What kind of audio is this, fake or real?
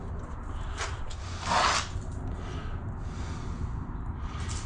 real